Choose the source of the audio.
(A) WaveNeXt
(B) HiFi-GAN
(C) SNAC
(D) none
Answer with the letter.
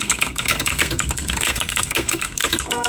C